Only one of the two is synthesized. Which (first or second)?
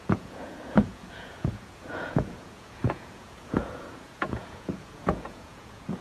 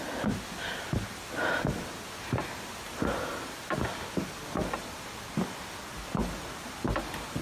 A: first